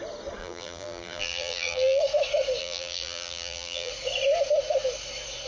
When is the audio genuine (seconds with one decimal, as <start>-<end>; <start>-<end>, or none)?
0.0-0.4; 2.0-2.6; 3.9-5.5